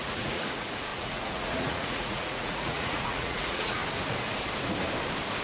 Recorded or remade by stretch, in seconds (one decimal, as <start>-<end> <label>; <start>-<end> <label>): 0.0-3.8 remade; 3.8-5.4 recorded